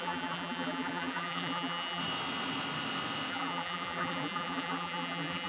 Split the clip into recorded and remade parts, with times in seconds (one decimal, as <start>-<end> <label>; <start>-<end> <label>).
0.0-2.0 remade; 2.0-3.3 recorded; 3.3-5.5 remade

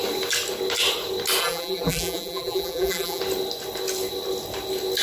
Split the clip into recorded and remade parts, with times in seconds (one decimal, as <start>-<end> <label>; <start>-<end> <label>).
0.0-1.4 recorded; 1.4-3.2 remade; 3.2-5.0 recorded

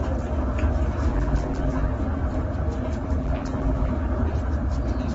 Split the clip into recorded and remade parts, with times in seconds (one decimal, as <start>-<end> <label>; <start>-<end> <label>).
0.0-1.1 recorded; 1.1-1.9 remade; 1.9-3.2 recorded; 3.2-3.9 remade; 3.9-5.1 recorded

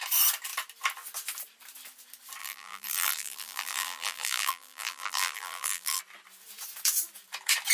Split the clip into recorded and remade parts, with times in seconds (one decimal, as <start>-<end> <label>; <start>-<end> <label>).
0.0-2.4 recorded; 2.4-6.0 remade; 6.0-7.7 recorded

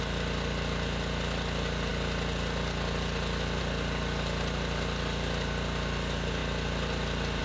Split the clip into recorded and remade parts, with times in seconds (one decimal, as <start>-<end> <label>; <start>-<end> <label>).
0.0-7.4 recorded